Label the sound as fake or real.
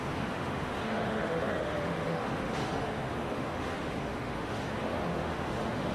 fake